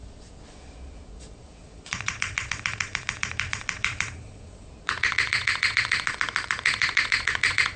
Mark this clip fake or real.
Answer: fake